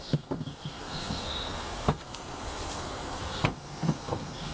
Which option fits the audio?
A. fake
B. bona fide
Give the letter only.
A